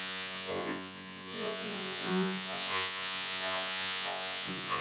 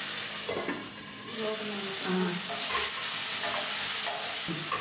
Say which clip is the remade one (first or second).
first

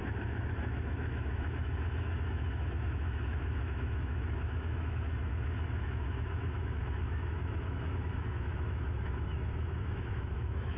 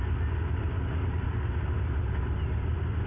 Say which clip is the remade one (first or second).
first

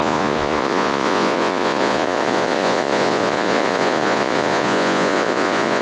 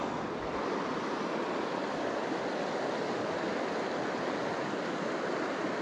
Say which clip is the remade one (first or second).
first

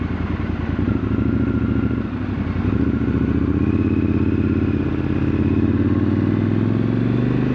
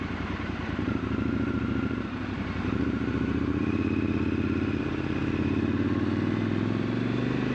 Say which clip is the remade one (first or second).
second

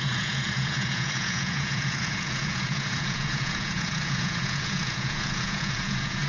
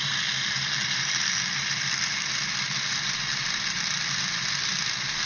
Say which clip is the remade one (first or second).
first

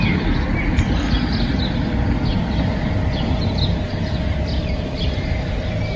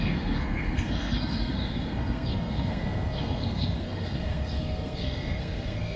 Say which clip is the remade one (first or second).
second